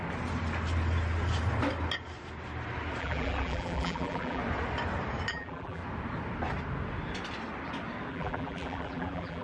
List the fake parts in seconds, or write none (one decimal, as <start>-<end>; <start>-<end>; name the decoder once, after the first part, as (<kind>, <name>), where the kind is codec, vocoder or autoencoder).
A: 3.0-4.4 (vocoder, BigVGAN v2); 5.3-5.8; 8.1-9.4